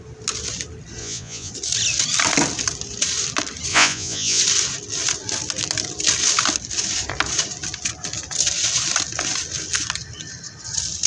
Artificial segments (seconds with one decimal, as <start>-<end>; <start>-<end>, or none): 1.0-1.5; 3.7-4.4